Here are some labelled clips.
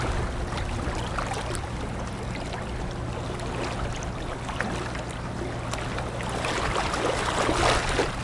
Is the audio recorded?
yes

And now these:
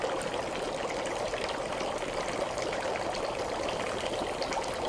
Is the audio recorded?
yes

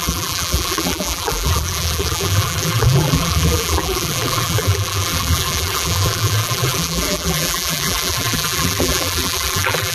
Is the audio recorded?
no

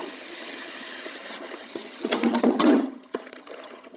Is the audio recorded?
no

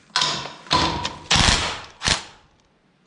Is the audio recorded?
yes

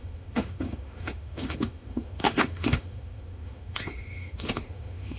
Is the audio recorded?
no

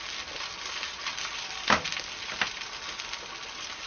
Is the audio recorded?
yes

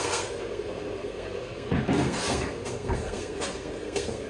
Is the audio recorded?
no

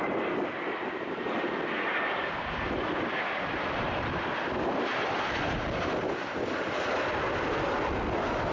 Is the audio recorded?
yes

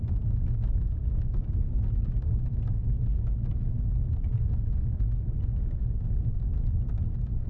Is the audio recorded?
yes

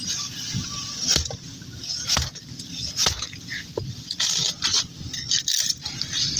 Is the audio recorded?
yes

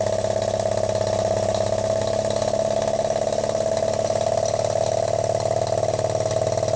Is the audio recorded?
yes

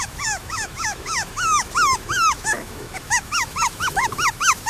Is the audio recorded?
no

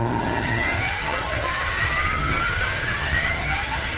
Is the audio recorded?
no